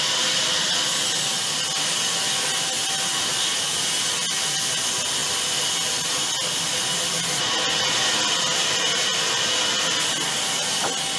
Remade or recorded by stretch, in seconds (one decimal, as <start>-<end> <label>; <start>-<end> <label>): 0.0-11.2 recorded